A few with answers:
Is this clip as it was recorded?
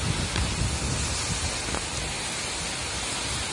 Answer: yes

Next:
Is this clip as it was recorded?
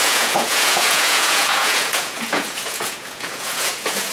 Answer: no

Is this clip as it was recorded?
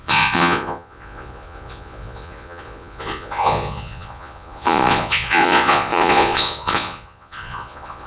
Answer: no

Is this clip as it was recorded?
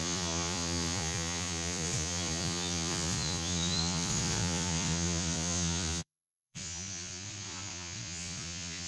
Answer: no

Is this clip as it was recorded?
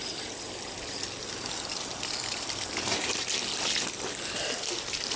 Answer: yes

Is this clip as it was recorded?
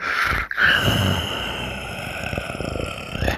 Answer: no